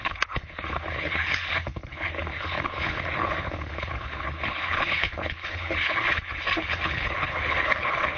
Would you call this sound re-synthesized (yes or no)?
yes